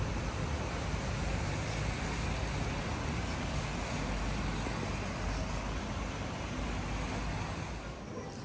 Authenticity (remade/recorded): recorded